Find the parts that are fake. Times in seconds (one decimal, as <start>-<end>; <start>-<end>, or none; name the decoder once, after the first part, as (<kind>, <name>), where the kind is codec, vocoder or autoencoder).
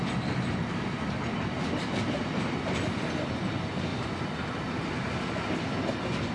1.8-3.4 (vocoder, BigVGAN v2); 3.9-4.8